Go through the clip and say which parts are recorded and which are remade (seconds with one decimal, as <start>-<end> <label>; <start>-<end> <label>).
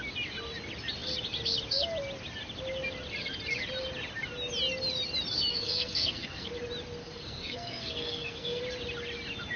0.0-5.5 recorded; 5.5-6.5 remade; 6.5-7.0 recorded; 7.0-8.6 remade; 8.6-9.6 recorded